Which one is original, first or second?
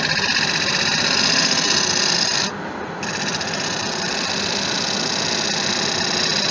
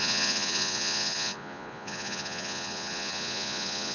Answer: first